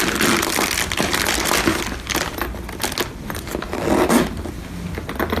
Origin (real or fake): real